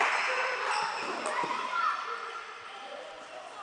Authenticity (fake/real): real